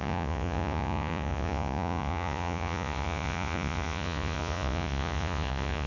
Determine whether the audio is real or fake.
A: fake